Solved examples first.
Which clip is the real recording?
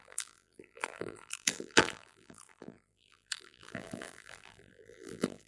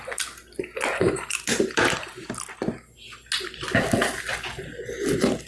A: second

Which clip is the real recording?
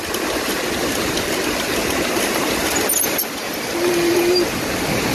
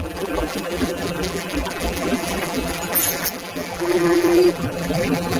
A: first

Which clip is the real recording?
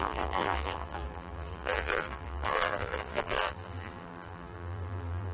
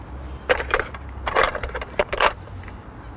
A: second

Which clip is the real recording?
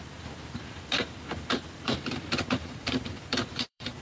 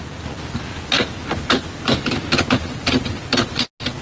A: second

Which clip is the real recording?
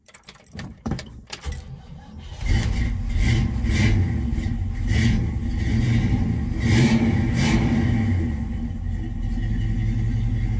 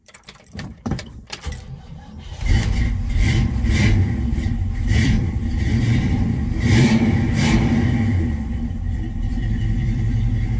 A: first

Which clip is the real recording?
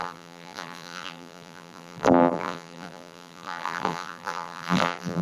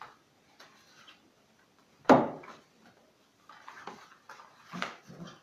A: second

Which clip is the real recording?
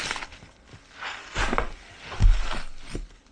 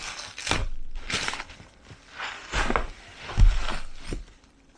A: first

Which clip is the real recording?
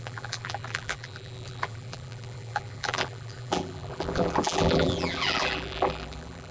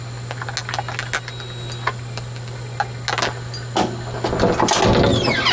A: second